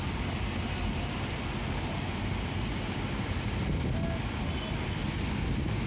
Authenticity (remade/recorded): recorded